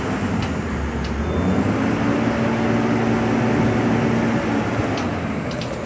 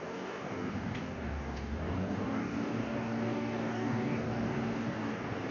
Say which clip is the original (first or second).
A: first